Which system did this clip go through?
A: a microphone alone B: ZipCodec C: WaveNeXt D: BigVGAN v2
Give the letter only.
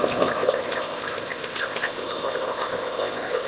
B